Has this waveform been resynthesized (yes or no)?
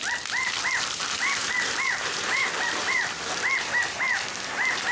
yes